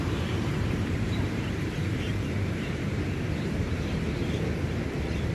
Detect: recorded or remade remade